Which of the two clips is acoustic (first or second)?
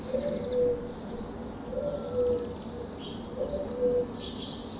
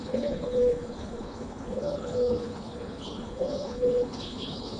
first